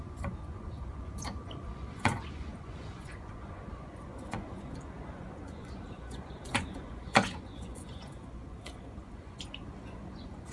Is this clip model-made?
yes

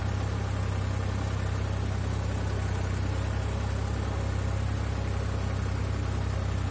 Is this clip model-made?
no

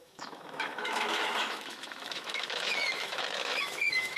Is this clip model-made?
yes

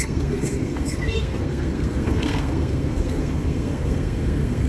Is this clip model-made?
yes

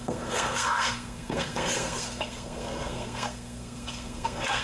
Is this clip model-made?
yes